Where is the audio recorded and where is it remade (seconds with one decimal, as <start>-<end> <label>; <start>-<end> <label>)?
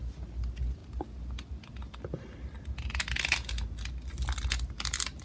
0.0-5.2 recorded